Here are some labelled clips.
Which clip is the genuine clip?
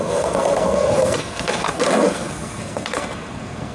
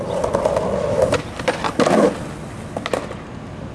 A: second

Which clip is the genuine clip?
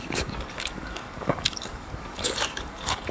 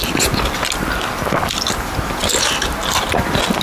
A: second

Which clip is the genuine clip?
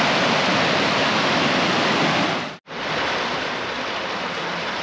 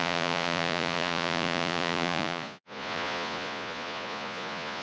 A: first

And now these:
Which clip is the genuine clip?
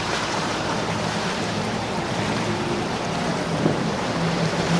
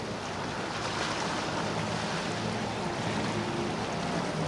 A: second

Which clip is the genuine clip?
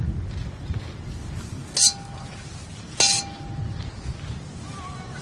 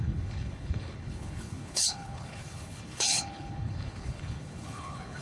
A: first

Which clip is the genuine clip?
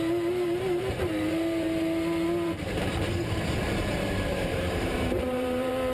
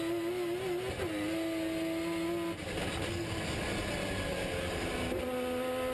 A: second